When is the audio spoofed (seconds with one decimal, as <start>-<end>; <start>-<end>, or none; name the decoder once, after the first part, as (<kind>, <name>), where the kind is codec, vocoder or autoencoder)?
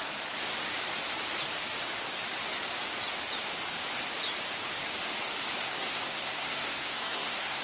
5.6-7.6 (codec, SNAC)